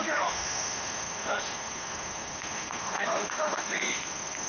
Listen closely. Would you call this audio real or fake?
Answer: fake